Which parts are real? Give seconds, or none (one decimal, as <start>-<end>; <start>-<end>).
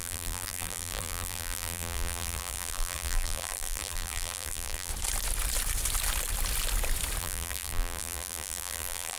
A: 4.9-7.2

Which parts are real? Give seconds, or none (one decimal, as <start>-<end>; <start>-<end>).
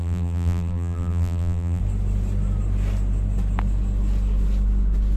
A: 1.8-5.2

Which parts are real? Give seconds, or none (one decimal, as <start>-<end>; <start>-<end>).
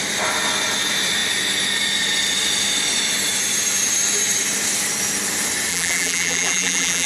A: 0.0-5.7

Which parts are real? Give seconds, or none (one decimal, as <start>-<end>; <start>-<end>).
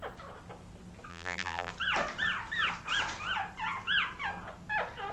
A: 0.0-1.1; 1.7-5.1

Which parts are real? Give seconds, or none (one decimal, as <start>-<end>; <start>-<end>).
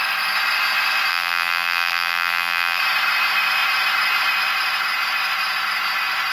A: 0.0-1.1; 2.8-6.3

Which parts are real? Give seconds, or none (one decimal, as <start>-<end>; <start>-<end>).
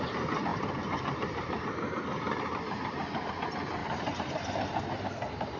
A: 0.0-0.5; 3.3-3.8; 4.5-5.6